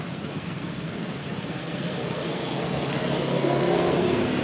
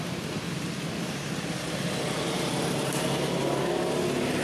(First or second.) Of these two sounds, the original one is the second